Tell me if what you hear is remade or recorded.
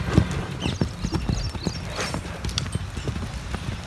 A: recorded